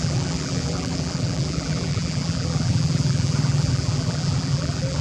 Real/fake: fake